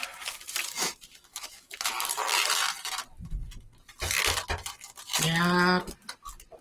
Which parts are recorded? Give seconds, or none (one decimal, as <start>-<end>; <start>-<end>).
0.0-1.3; 1.9-6.6